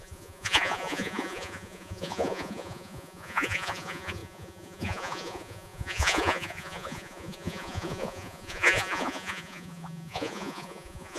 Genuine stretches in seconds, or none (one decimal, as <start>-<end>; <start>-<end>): none